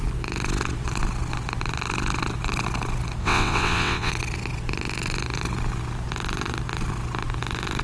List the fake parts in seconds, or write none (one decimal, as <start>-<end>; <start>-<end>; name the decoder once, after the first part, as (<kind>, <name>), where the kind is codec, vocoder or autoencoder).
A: 3.2-4.1 (vocoder, WaveNeXt)